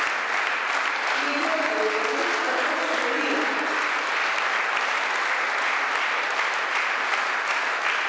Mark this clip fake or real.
real